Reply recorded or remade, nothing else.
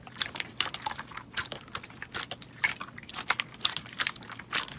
recorded